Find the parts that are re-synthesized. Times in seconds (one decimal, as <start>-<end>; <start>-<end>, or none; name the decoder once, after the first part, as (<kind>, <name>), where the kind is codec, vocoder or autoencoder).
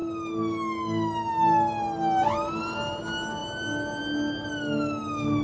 none